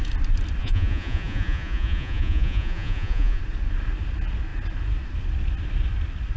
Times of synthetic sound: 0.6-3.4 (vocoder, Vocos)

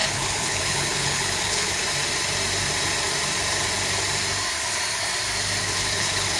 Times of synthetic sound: 0.0-1.8 (codec, HILCodec); 5.6-6.4

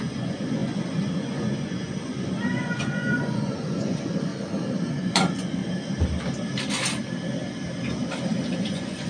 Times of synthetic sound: 0.0-4.3 (vocoder, Vocos); 4.9-5.6; 8.6-9.1

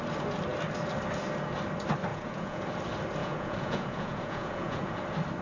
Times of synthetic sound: 2.1-2.6 (vocoder, Vocos); 3.2-4.9